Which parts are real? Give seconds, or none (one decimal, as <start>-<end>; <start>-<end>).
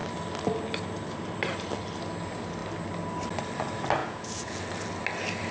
0.0-4.0; 4.6-5.5